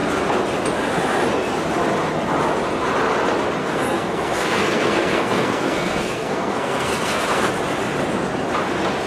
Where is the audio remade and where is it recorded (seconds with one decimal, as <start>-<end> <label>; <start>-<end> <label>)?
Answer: 0.0-3.6 recorded; 3.6-7.5 remade; 7.5-9.1 recorded